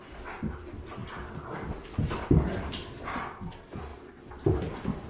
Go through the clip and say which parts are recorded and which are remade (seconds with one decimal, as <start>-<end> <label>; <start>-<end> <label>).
0.0-5.1 recorded